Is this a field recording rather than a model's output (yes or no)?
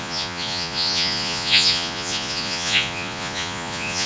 no